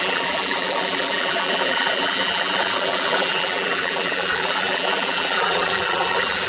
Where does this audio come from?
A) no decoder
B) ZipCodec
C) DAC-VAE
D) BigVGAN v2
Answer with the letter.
D